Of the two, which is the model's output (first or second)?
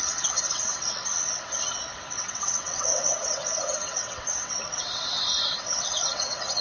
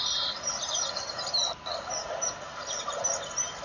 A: first